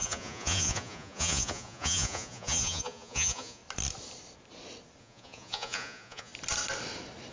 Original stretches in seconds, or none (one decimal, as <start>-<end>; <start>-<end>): 3.6-5.0; 6.3-7.3